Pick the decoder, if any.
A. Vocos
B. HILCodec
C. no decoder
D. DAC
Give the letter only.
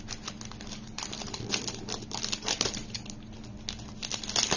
C